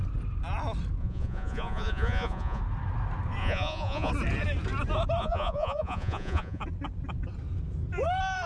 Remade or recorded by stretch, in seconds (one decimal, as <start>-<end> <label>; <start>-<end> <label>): 0.0-1.0 recorded; 1.0-2.6 remade; 2.6-3.4 recorded; 3.4-4.1 remade; 4.1-5.2 recorded; 5.2-6.6 remade; 6.6-8.5 recorded